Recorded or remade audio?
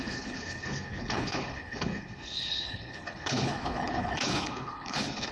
remade